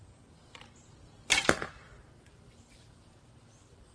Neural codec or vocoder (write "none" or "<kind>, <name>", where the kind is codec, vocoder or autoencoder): vocoder, BigVGAN v2